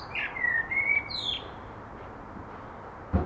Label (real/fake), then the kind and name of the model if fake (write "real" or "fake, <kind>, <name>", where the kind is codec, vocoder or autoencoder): real